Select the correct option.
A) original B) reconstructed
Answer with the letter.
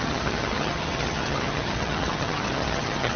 B